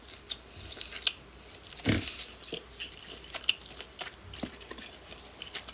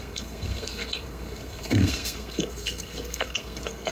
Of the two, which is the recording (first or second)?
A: first